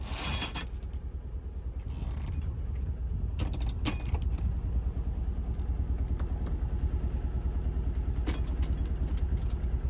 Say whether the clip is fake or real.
real